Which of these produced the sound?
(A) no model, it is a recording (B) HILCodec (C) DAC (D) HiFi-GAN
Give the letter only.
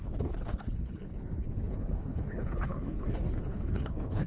B